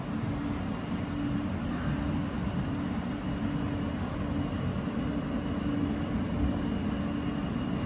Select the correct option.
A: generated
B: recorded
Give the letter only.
B